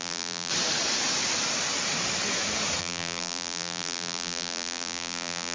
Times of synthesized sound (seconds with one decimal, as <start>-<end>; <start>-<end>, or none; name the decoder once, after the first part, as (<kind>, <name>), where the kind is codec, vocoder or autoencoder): 0.0-0.5 (vocoder, BigVGAN v2); 2.8-5.5